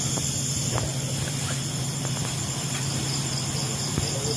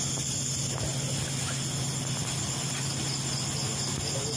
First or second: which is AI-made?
first